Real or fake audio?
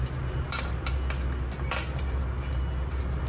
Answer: real